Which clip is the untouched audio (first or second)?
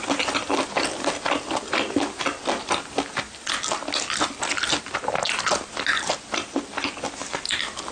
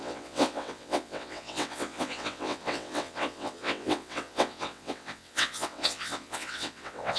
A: first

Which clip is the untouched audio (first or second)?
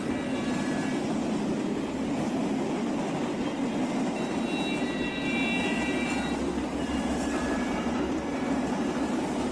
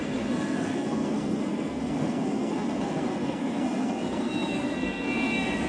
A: first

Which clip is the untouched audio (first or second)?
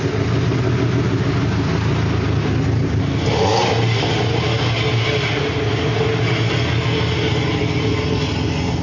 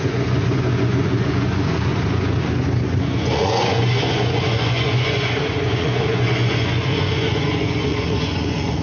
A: first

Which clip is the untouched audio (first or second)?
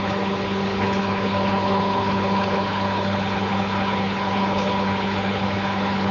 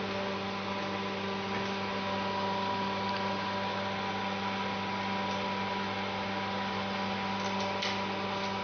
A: second